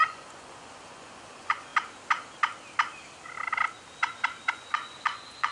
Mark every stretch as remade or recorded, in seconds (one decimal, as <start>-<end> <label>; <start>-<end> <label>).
0.0-1.7 remade; 1.7-4.5 recorded; 4.5-5.5 remade